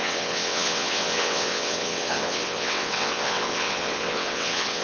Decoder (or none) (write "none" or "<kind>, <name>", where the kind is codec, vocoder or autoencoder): vocoder, WaveNeXt